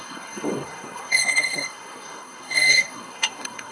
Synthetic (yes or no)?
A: yes